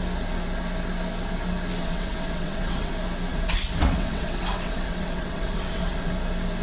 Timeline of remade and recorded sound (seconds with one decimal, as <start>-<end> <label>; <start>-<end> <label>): 0.0-1.8 recorded; 1.8-2.9 remade; 2.9-3.3 recorded; 3.3-6.1 remade; 6.1-6.6 recorded